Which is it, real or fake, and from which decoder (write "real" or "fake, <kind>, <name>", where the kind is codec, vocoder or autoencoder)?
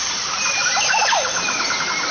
fake, vocoder, BigVGAN v2